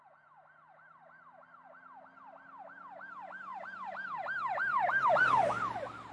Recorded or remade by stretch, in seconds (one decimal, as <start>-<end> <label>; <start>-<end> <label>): 0.0-6.1 recorded